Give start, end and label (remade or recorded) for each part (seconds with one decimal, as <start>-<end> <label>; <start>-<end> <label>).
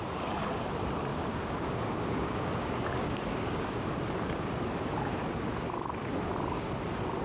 0.0-1.1 recorded; 1.1-4.0 remade; 4.0-7.2 recorded